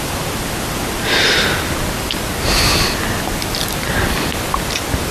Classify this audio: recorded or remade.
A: recorded